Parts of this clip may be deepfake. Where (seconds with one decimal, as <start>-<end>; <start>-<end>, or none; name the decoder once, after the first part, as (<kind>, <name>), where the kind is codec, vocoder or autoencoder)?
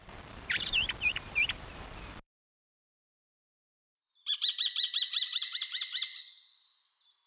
0.0-2.7 (vocoder, BigVGAN v2); 3.7-6.2